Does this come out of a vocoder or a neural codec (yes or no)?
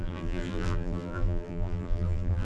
yes